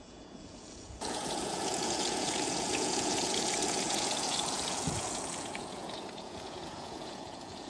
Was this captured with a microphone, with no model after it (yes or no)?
no